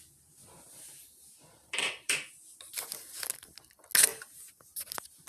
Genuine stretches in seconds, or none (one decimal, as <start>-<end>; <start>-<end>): 0.0-0.4; 2.3-5.3